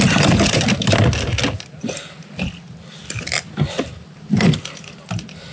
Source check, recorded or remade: recorded